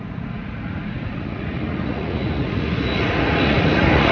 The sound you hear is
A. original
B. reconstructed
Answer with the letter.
B